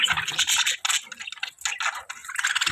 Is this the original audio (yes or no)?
yes